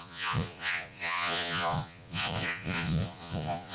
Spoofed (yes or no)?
yes